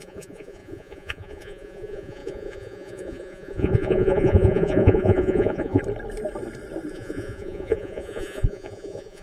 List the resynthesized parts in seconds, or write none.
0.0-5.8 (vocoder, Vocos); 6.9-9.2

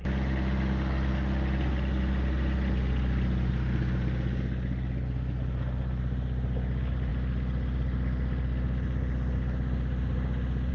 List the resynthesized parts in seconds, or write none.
none

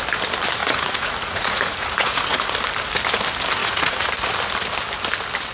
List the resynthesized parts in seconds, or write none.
0.6-2.5 (vocoder, Vocos); 3.6-4.1

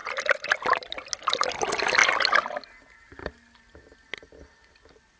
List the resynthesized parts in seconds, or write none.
none

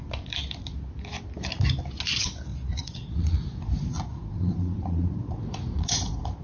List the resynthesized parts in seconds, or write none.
2.5-6.4 (vocoder, Vocos)

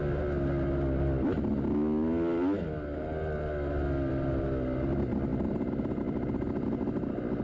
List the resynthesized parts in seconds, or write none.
none